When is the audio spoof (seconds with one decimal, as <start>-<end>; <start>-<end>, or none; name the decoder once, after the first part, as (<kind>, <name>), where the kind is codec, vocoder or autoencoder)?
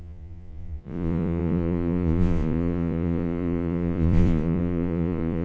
0.0-5.4 (vocoder, Vocos)